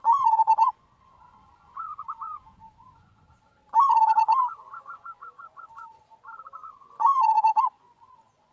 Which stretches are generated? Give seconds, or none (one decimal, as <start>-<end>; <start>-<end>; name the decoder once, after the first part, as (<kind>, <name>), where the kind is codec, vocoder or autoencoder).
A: 0.0-3.3 (vocoder, Vocos); 3.8-8.5